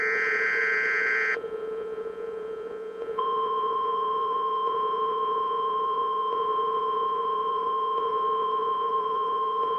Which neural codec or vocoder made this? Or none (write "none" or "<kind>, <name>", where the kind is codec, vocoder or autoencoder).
vocoder, Vocos